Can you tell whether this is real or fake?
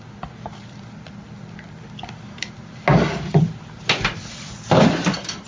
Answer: real